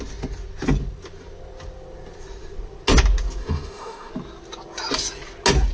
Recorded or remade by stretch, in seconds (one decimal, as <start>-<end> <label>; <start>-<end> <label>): 0.0-3.4 recorded; 3.4-4.1 remade; 4.1-5.7 recorded